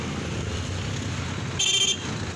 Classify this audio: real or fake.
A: real